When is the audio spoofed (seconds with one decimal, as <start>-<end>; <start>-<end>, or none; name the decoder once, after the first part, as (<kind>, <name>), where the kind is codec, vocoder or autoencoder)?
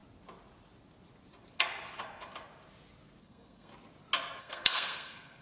3.2-3.7 (codec, SNAC); 4.4-5.4